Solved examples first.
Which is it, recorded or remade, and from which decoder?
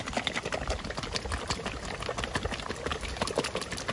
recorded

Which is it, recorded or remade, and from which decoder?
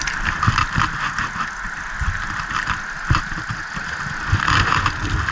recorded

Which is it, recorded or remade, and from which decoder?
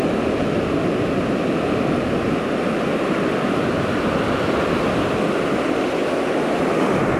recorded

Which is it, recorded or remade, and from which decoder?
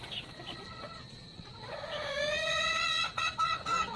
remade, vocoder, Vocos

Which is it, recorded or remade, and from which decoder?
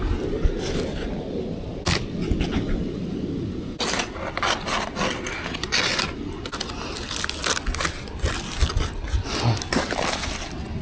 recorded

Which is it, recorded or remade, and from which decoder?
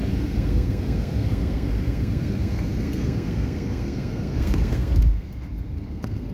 remade, codec, SNAC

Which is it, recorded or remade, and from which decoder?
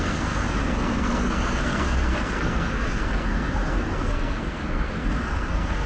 remade, codec, SNAC